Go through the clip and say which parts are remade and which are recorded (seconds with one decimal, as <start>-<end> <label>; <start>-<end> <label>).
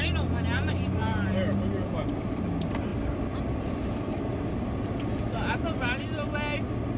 0.0-2.9 recorded; 2.9-3.8 remade; 3.8-7.0 recorded